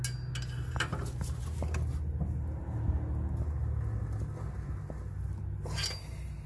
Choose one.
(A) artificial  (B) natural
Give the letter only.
B